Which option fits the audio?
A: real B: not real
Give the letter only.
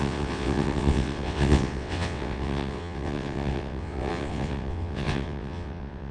B